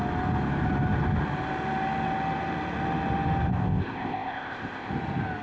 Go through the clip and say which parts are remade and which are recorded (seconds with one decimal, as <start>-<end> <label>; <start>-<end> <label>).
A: 0.0-3.5 recorded; 3.5-4.9 remade; 4.9-5.4 recorded

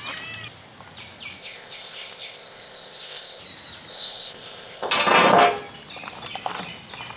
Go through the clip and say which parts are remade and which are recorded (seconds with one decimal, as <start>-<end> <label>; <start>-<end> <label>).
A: 0.0-1.4 recorded; 1.4-3.4 remade; 3.4-3.9 recorded; 3.9-4.9 remade; 4.9-7.2 recorded

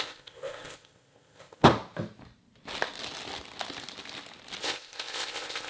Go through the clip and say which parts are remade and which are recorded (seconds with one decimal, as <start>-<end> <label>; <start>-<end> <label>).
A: 0.0-1.7 remade; 1.7-4.6 recorded; 4.6-5.7 remade